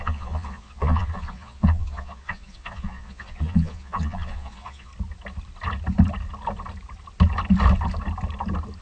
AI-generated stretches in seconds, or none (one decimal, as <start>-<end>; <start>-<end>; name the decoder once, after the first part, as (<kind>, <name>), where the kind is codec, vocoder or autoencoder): 0.0-4.9 (vocoder, Vocos)